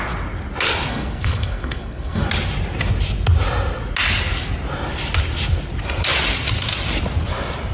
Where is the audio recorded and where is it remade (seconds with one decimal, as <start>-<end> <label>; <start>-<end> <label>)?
0.0-0.9 recorded; 0.9-2.2 remade; 2.2-7.7 recorded